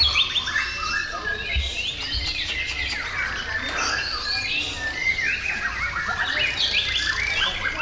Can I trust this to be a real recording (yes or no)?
yes